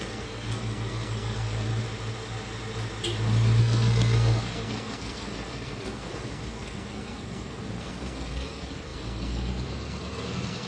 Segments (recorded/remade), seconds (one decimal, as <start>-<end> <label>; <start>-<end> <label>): 0.0-1.7 remade; 1.7-3.6 recorded; 3.6-10.7 remade